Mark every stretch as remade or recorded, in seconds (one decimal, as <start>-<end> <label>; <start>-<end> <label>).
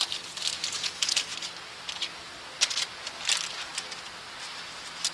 0.0-5.1 recorded